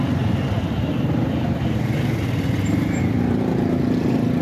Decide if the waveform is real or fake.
real